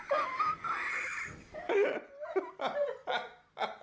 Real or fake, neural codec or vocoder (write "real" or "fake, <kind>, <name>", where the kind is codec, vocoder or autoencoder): real